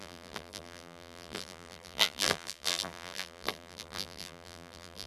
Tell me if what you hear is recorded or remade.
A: remade